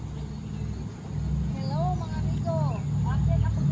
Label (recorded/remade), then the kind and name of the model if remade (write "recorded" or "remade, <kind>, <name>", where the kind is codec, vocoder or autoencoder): recorded